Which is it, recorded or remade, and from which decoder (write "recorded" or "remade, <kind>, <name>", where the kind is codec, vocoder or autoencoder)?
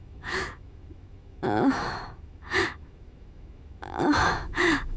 remade, autoencoder, DAC-VAE